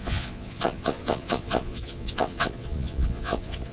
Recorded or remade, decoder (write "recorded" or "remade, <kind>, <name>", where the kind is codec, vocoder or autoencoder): remade, vocoder, Vocos